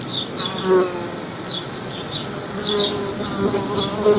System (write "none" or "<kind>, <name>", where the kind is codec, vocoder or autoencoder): none